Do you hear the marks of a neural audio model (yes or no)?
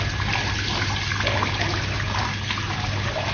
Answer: no